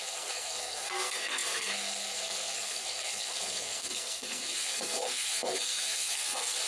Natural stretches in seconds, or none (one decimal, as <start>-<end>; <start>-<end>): none